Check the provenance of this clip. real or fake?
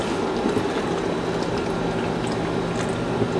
real